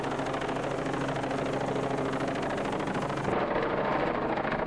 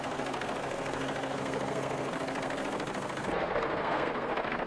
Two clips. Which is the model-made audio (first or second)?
second